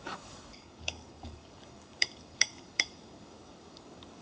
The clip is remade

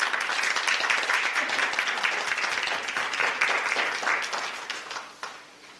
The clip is recorded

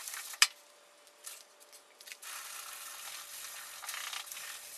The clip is recorded